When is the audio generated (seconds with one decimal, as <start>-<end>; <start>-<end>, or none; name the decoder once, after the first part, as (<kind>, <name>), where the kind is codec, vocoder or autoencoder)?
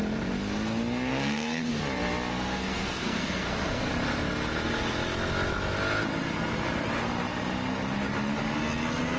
1.1-1.7 (codec, SNAC); 2.3-3.9